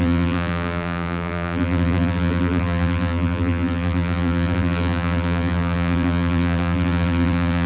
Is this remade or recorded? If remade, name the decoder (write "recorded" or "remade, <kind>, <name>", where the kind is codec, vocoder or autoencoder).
remade, vocoder, BigVGAN v2